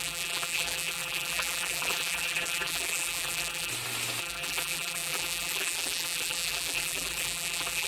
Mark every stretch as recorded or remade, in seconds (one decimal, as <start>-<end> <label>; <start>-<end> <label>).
0.0-3.7 remade; 3.7-4.2 recorded; 4.2-7.9 remade